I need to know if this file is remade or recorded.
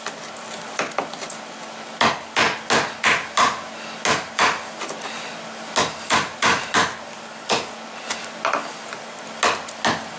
recorded